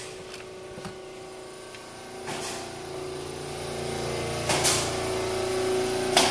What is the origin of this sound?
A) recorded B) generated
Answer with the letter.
A